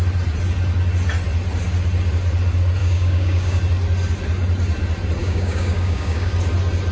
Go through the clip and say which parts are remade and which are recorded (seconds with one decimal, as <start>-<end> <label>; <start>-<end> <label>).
0.0-2.8 recorded; 2.8-3.6 remade; 3.6-5.2 recorded; 5.2-6.3 remade; 6.3-6.9 recorded